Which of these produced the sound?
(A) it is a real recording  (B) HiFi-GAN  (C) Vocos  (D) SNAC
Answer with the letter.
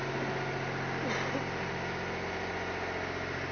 A